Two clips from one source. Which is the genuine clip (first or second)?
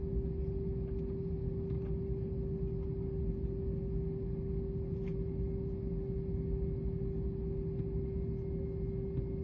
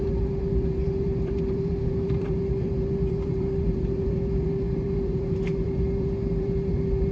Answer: first